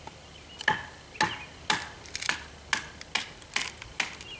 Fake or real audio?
real